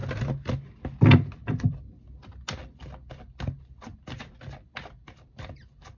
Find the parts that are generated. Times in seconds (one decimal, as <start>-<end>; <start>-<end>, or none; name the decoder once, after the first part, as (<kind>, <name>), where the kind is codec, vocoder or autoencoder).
none

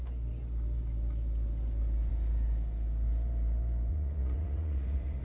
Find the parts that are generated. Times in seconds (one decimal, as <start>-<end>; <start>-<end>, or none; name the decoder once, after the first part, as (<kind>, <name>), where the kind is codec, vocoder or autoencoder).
3.9-5.2 (vocoder, Vocos)

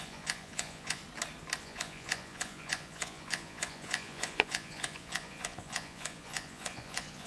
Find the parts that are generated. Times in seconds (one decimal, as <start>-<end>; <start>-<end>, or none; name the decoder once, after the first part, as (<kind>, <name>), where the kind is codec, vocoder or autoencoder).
0.0-1.0 (vocoder, Vocos); 1.6-7.3

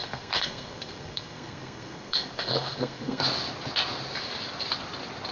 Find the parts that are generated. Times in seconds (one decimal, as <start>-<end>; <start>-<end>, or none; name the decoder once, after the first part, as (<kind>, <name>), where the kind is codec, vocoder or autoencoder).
0.0-3.2 (codec, SNAC)